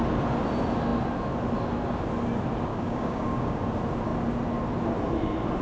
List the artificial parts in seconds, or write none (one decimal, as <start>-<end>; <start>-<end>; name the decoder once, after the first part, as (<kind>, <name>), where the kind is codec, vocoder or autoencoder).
2.7-3.6 (codec, DAC)